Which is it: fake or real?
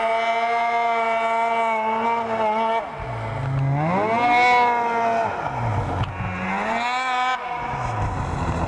real